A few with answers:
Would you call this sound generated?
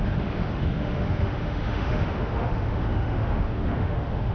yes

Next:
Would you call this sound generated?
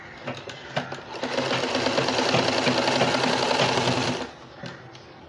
no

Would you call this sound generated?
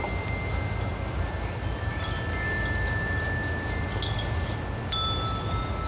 no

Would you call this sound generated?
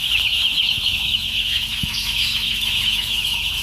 yes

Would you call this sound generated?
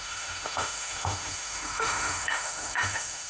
yes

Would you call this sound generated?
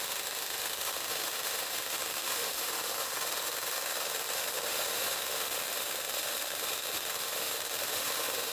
yes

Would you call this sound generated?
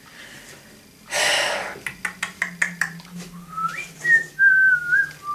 no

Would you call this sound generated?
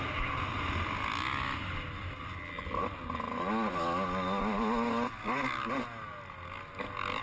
no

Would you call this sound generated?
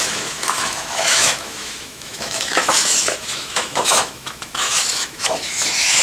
yes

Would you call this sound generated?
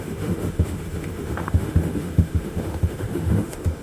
yes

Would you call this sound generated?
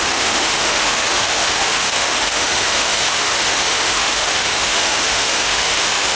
yes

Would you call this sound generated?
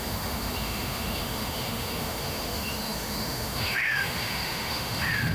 yes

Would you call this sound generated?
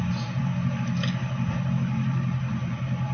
no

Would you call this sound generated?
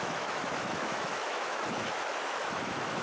yes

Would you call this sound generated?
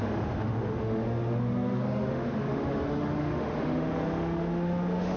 yes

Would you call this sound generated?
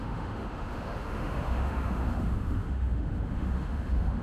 yes